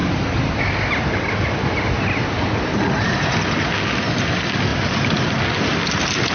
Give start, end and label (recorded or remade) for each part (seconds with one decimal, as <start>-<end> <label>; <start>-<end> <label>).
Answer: 0.0-6.3 recorded